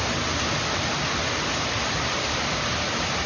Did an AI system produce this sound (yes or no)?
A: no